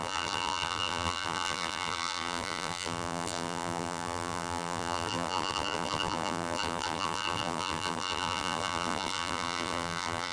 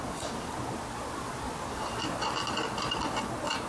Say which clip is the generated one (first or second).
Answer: first